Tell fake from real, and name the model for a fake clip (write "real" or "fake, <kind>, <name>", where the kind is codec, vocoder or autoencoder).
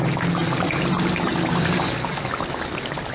real